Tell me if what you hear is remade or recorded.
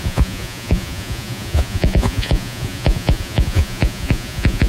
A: remade